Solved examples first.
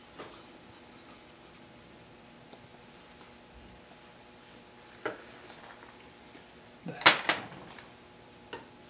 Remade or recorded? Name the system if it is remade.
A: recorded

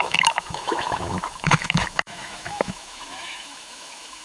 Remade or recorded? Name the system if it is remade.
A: remade, autoencoder, DAC-VAE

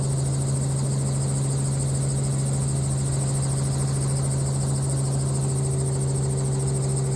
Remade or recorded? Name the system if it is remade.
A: recorded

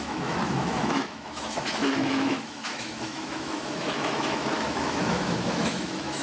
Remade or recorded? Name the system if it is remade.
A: remade, autoencoder, DAC-VAE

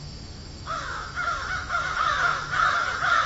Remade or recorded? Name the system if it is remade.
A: remade, autoencoder, DAC-VAE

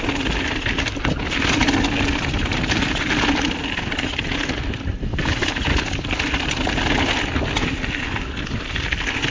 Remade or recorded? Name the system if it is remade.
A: recorded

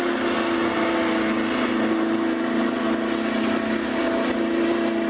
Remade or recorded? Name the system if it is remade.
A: recorded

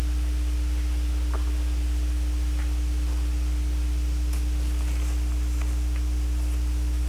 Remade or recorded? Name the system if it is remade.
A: recorded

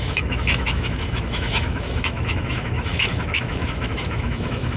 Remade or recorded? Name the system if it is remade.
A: remade, autoencoder, DAC-VAE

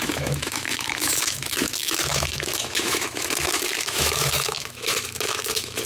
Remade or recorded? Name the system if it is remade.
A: remade, autoencoder, DAC-VAE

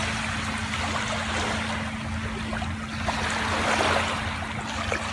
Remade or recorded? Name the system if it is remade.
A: recorded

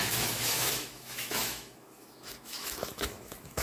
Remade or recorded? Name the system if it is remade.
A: remade, autoencoder, DAC-VAE